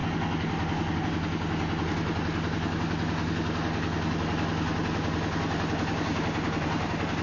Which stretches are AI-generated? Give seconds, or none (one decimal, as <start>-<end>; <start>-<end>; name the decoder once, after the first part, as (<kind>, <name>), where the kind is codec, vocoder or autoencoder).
none